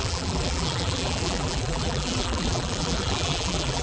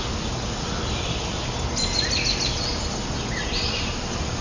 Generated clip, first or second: first